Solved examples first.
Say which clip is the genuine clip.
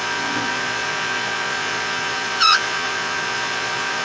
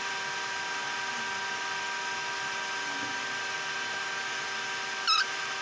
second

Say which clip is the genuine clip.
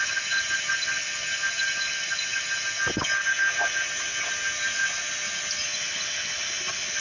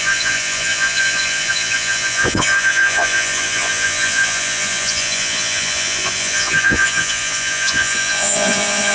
first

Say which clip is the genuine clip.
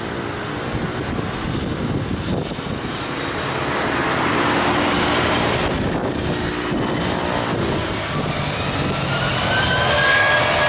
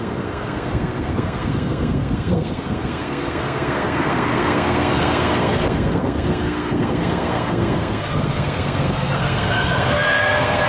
first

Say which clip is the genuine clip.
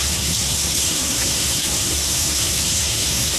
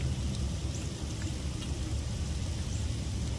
second